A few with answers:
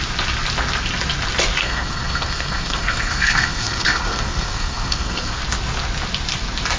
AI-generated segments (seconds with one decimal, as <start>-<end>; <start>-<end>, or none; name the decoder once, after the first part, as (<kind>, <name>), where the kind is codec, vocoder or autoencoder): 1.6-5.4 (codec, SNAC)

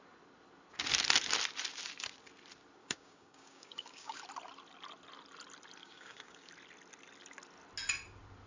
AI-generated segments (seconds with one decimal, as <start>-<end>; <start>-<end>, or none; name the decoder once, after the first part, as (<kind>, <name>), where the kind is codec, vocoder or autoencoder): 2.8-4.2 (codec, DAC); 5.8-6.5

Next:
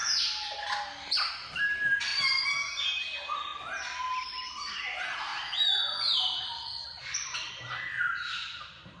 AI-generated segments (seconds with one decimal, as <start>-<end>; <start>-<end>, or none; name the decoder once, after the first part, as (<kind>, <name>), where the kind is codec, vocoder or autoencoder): 1.6-2.1 (vocoder, BigVGAN v2); 2.7-3.5; 4.5-5.3; 6.2-9.0